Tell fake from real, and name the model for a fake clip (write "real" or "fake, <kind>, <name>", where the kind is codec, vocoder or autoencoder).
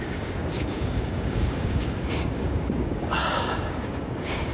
fake, codec, DAC